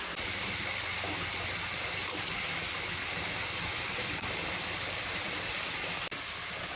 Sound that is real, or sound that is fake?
real